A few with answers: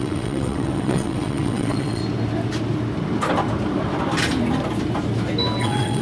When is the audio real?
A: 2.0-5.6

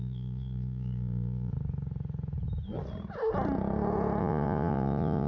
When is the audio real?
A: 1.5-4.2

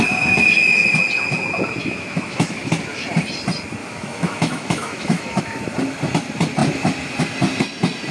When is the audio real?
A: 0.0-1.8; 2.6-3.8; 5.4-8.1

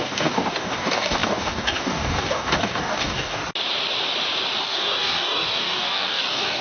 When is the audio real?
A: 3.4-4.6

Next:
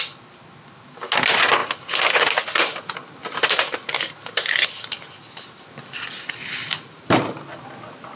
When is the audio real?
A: 0.0-8.2

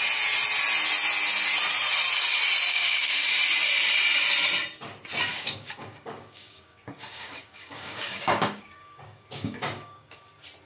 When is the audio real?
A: 0.0-2.7; 3.3-5.3; 10.2-10.7